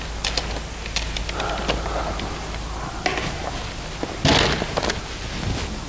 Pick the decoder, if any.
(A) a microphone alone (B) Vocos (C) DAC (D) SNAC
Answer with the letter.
A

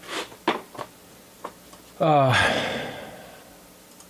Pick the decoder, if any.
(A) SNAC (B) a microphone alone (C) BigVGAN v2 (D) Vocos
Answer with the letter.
B